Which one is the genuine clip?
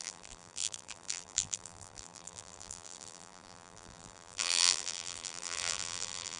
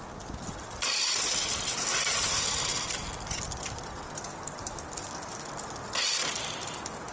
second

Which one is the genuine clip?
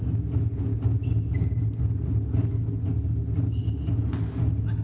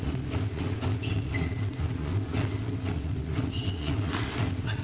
first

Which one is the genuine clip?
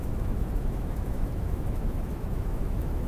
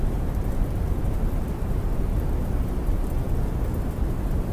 second